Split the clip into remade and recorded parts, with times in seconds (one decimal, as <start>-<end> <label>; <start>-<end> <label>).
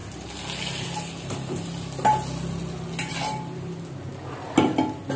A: 0.0-5.2 recorded